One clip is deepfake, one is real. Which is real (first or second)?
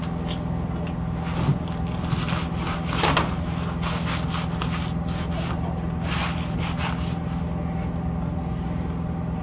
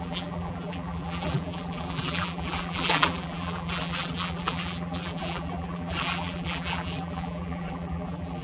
first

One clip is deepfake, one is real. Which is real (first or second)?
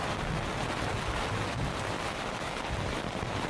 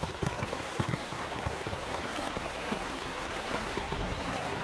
first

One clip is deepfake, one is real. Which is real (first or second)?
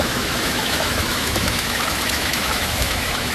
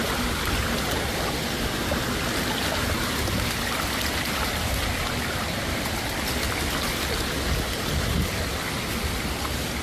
second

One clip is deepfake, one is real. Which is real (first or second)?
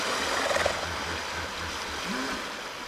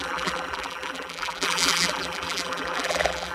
first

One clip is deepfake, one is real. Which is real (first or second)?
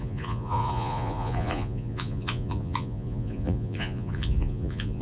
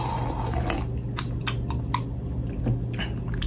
second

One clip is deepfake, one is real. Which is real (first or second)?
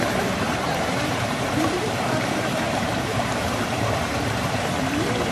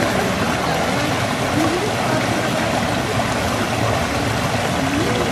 second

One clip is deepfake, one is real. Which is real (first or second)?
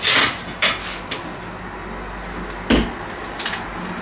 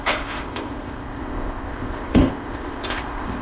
first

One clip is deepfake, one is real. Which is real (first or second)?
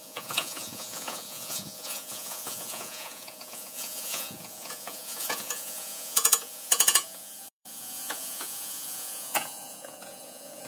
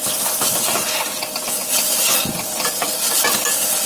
second